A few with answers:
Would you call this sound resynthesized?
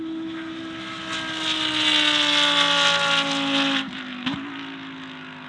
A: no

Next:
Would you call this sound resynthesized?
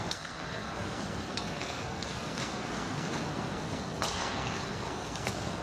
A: yes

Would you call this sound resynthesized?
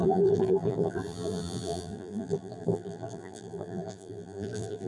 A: yes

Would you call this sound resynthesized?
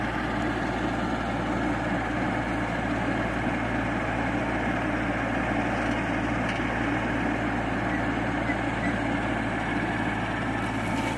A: no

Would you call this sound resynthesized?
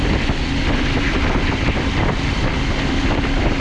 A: no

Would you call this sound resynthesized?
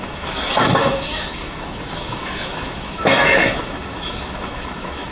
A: yes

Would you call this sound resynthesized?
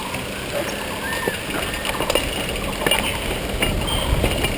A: no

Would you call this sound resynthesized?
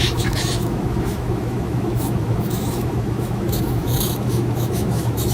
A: yes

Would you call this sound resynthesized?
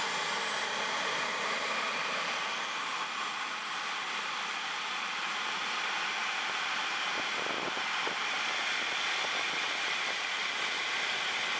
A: yes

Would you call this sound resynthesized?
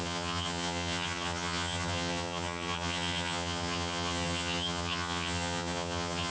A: yes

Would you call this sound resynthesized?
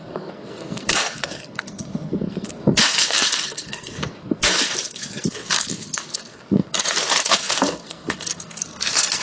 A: yes